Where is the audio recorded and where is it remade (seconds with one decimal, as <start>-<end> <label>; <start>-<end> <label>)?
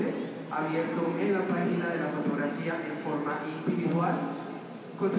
0.0-5.2 recorded